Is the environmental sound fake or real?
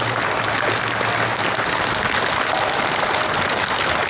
real